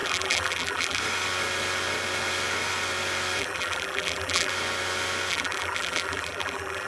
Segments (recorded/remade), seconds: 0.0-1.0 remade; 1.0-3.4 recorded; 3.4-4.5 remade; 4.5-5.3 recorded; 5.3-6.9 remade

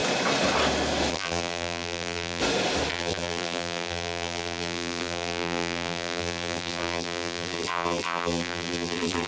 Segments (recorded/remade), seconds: 0.0-1.1 recorded; 1.1-2.4 remade; 2.4-2.9 recorded; 2.9-9.3 remade

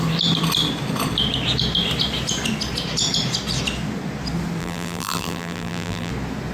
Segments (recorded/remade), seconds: 0.0-4.6 recorded; 4.6-6.1 remade; 6.1-6.5 recorded